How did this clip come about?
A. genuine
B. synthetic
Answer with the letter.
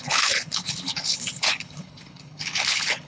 B